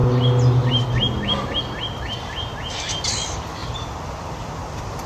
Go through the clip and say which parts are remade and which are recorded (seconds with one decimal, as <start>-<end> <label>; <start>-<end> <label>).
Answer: 0.0-3.1 recorded; 3.1-5.1 remade

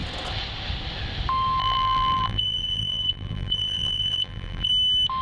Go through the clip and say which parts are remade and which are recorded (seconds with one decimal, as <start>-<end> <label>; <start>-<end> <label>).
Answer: 0.0-1.6 recorded; 1.6-4.7 remade; 4.7-5.2 recorded